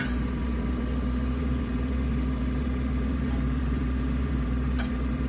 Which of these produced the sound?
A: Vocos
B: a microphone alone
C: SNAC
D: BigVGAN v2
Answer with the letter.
D